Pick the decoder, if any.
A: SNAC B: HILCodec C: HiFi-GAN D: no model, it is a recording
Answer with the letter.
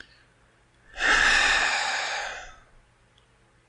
D